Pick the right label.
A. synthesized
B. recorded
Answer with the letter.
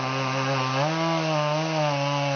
B